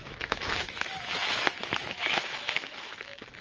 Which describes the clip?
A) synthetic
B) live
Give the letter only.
A